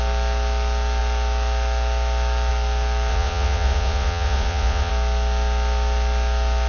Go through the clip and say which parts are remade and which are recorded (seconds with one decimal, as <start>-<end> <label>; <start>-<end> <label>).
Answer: 0.0-3.1 recorded; 3.1-4.9 remade; 4.9-6.7 recorded